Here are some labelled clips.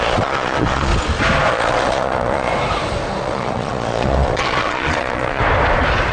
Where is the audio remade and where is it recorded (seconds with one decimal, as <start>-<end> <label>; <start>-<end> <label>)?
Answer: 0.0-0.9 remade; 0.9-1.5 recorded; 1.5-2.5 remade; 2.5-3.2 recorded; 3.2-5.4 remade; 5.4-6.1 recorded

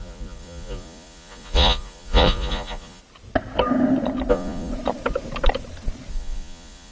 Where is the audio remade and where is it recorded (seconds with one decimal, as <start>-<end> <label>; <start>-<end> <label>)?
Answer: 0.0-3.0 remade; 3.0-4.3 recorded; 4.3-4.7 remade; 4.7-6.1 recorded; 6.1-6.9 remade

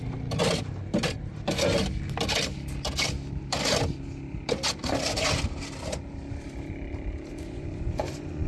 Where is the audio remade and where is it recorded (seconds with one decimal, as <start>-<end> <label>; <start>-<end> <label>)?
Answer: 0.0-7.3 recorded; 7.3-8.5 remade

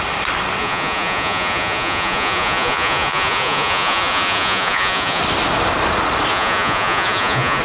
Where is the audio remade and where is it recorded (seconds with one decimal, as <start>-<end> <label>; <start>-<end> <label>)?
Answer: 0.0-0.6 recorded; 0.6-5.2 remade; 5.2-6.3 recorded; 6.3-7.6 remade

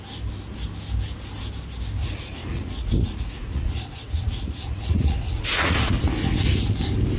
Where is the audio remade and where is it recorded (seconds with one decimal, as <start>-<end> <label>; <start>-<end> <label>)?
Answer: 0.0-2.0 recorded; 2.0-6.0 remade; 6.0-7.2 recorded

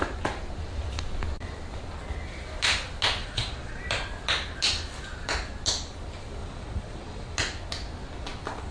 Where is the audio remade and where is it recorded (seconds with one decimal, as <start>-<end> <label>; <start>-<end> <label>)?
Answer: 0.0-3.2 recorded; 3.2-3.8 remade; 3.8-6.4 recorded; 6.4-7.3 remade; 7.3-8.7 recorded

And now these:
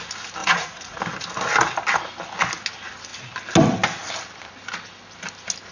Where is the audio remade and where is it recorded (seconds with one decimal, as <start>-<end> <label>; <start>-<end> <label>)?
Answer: 0.0-0.4 recorded; 0.4-1.0 remade; 1.0-5.7 recorded

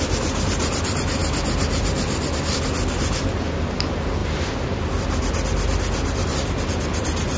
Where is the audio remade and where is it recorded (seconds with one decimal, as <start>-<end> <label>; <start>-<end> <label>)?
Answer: 0.0-7.4 recorded